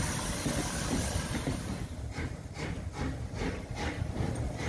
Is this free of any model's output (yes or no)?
yes